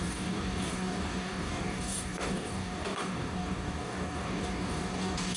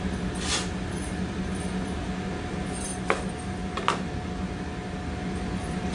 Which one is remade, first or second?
first